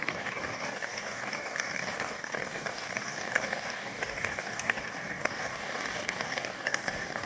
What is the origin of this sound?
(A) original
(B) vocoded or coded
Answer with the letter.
B